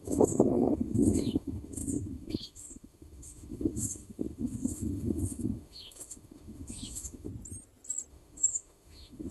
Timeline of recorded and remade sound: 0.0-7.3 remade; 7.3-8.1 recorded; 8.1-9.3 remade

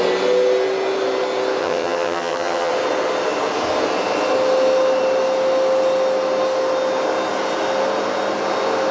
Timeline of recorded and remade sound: 0.0-1.6 recorded; 1.6-2.7 remade; 2.7-8.9 recorded

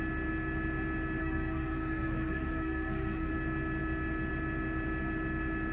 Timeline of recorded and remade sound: 0.0-1.2 recorded; 1.2-3.3 remade; 3.3-5.7 recorded

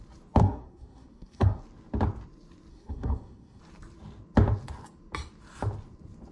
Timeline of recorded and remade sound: 0.0-0.4 recorded; 0.4-1.6 remade; 1.6-2.7 recorded; 2.7-3.6 remade; 3.6-6.3 recorded

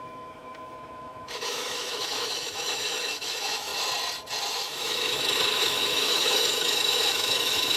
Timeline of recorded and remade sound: 0.0-3.7 remade; 3.7-4.5 recorded; 4.5-7.8 remade